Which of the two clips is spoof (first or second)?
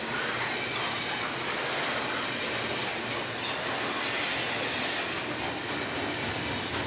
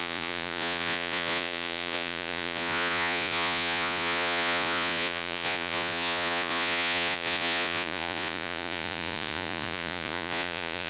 second